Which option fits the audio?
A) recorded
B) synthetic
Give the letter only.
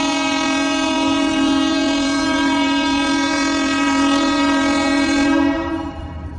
B